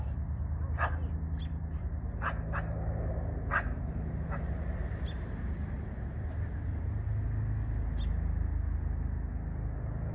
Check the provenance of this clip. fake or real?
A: real